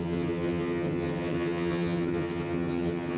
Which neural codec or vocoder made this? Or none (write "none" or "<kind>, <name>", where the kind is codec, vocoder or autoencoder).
vocoder, HiFi-GAN